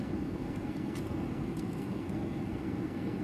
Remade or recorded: remade